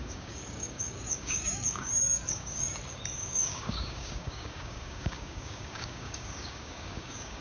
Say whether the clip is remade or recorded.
remade